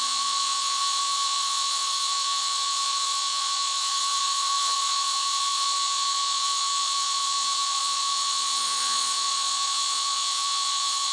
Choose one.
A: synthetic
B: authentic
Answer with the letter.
A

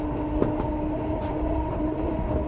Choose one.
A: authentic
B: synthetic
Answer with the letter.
A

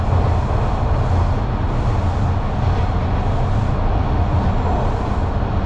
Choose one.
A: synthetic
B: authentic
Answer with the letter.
B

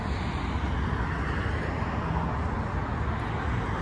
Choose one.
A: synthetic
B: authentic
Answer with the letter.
B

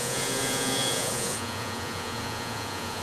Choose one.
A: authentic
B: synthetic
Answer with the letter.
B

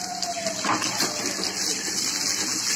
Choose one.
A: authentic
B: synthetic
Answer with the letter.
A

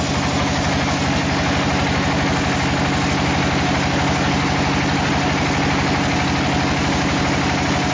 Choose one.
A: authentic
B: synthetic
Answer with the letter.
A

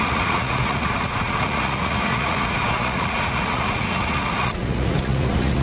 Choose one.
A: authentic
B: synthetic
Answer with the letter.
B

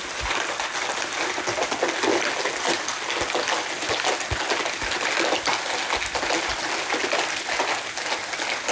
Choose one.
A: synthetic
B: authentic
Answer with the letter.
B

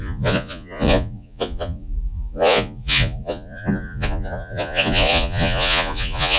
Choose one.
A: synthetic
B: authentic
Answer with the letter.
A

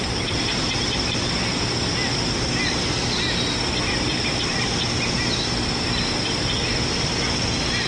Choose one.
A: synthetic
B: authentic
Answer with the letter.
B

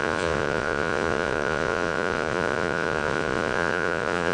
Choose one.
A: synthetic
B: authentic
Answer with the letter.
A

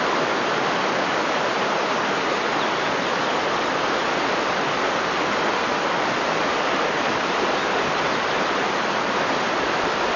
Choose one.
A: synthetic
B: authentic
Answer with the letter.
B